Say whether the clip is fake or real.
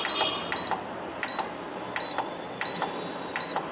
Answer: real